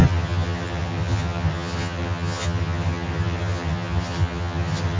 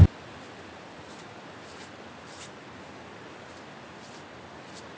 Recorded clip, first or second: second